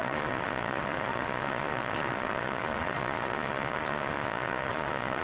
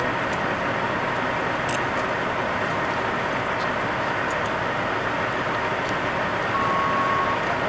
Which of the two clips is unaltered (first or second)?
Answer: second